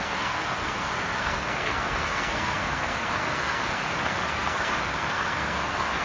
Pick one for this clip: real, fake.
fake